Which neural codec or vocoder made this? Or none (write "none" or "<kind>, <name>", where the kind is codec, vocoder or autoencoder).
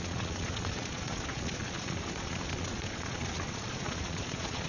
vocoder, Vocos